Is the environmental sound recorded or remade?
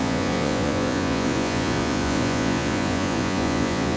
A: remade